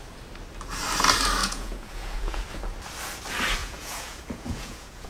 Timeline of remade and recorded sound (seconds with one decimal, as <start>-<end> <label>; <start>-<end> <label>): 0.0-1.4 recorded; 1.4-2.4 remade; 2.4-3.6 recorded; 3.6-5.1 remade